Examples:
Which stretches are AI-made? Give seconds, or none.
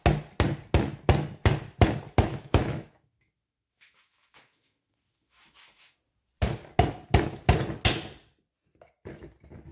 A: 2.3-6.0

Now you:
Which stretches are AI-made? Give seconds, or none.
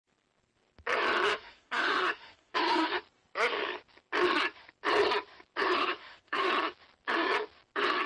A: 1.3-3.0; 5.8-6.5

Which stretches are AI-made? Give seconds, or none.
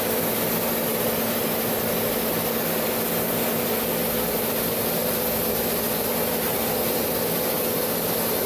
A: none